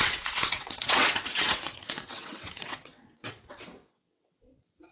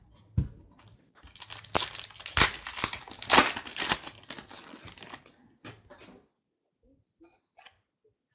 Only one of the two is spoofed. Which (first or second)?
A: first